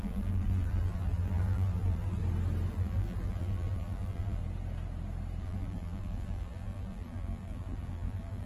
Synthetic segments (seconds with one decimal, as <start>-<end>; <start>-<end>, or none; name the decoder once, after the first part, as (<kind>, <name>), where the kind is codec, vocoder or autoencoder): 0.0-2.2 (vocoder, BigVGAN v2); 2.7-4.4; 5.4-8.5